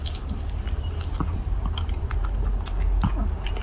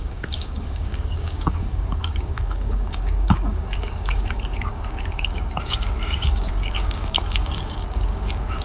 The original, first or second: first